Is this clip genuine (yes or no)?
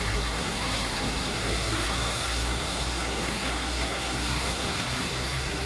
no